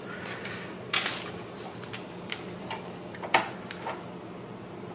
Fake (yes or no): no